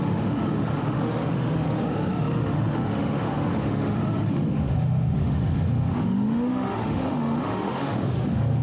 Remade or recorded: remade